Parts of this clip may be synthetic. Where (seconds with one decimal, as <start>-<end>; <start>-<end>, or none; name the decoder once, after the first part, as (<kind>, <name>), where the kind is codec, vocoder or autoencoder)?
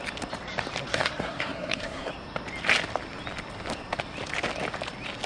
0.9-2.1 (codec, SNAC)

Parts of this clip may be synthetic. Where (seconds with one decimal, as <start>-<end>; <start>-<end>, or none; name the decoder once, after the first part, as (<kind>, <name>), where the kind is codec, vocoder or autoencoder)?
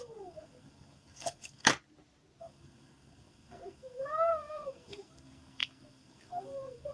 0.0-1.7 (codec, SNAC); 2.4-6.9